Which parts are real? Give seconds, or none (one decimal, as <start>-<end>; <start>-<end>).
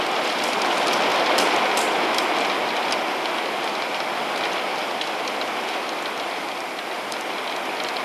0.0-8.0